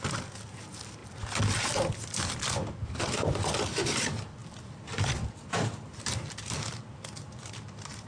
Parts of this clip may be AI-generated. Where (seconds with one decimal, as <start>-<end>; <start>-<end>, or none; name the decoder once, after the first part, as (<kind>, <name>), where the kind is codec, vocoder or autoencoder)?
4.4-6.0 (vocoder, BigVGAN v2)